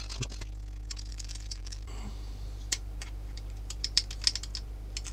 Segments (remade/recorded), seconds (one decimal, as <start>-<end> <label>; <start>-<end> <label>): 0.0-1.1 recorded; 1.1-4.1 remade; 4.1-5.1 recorded